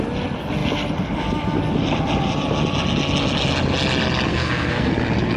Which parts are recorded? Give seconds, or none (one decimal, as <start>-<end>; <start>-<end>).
0.0-4.3; 4.9-5.4